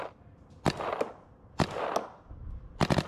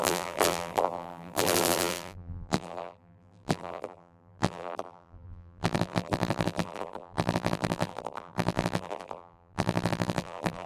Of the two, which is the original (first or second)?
first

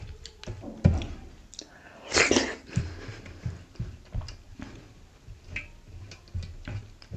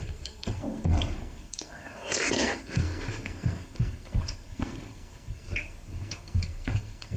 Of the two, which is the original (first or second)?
first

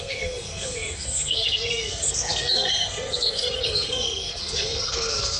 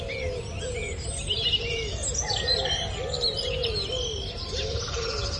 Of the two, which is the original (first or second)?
second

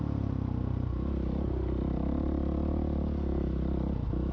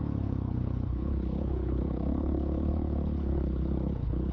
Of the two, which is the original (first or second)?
first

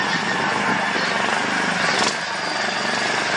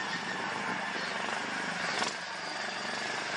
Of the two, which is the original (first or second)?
first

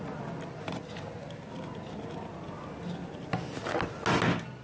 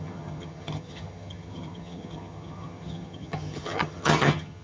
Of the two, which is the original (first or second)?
first